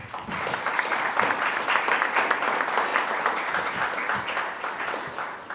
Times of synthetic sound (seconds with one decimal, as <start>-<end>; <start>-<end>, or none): 0.0-1.8